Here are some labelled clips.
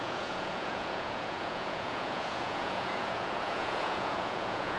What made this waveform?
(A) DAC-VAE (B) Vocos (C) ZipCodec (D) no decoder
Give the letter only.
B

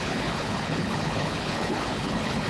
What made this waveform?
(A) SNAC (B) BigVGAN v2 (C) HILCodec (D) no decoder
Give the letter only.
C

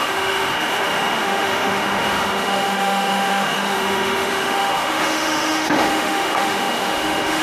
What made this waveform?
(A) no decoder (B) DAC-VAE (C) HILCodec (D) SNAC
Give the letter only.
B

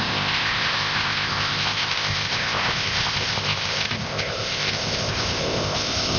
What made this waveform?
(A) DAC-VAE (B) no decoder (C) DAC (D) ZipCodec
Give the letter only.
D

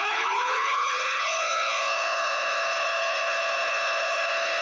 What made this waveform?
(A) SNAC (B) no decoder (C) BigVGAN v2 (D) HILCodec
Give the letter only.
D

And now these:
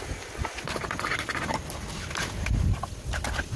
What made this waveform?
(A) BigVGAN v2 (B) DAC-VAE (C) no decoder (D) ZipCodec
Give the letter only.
C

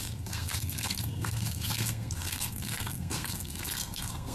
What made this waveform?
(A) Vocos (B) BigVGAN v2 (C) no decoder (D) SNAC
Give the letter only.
D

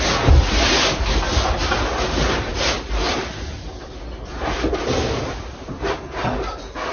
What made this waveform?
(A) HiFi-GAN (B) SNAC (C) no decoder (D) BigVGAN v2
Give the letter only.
C